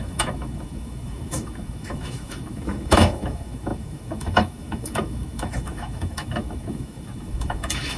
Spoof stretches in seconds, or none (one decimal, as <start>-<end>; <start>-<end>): 0.0-8.0